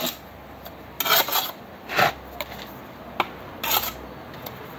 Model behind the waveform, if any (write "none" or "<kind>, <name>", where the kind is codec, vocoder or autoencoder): none